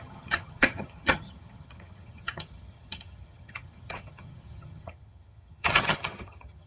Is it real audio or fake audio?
fake